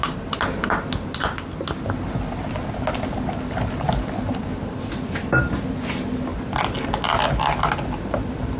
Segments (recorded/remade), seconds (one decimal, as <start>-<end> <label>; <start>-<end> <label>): 0.0-8.6 recorded